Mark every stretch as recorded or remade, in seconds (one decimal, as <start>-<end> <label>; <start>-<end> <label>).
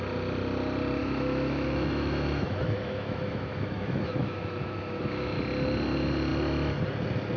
0.0-1.0 recorded; 1.0-5.4 remade; 5.4-7.4 recorded